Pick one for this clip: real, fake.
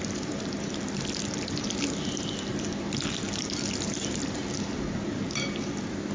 real